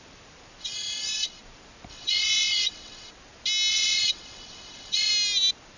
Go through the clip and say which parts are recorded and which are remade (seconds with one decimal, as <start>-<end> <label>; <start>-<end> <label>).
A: 0.0-0.6 recorded; 0.6-1.4 remade; 1.4-1.9 recorded; 1.9-3.1 remade; 3.1-3.7 recorded; 3.7-5.1 remade; 5.1-5.8 recorded